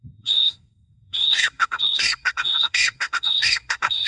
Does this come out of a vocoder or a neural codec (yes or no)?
yes